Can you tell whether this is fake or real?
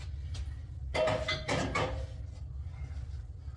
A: real